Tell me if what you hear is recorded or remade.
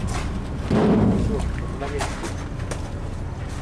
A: recorded